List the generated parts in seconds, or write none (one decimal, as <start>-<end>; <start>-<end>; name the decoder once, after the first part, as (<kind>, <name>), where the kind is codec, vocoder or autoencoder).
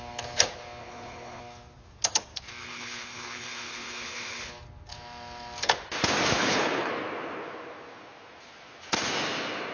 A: 0.8-1.4 (codec, HILCodec); 2.6-4.5; 6.4-6.9